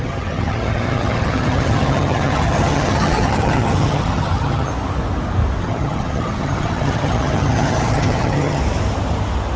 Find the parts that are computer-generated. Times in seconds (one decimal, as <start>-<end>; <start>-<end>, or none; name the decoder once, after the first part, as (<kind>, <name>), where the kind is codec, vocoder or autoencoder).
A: 0.0-4.7 (vocoder, HiFi-GAN); 5.6-8.6